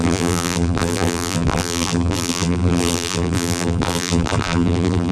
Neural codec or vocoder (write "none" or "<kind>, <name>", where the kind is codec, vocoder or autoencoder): vocoder, BigVGAN v2